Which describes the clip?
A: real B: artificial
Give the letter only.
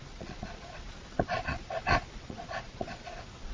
B